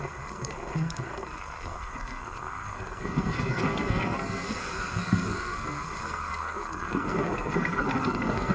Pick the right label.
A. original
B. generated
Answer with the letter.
B